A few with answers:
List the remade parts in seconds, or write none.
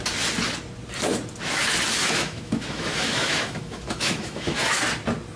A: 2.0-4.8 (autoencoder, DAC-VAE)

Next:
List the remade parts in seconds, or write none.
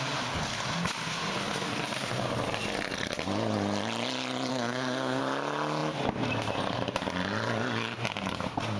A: 4.5-5.2 (codec, SNAC)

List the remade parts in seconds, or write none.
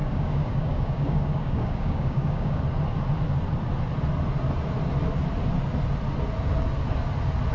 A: 0.0-2.6 (codec, DAC)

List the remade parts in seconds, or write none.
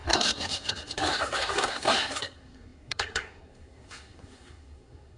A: 0.0-5.2 (codec, SNAC)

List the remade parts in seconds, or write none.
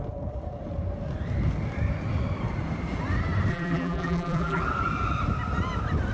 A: 3.5-4.6 (vocoder, BigVGAN v2)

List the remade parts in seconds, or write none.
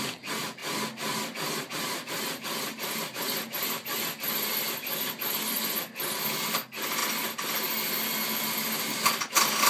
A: none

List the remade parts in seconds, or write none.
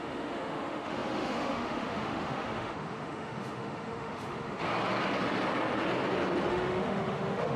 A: 0.0-4.7 (autoencoder, DAC-VAE); 6.5-7.6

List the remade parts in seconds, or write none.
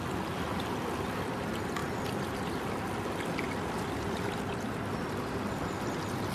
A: none